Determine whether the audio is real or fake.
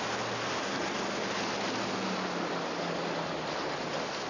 real